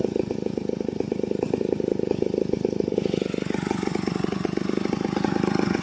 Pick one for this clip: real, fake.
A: fake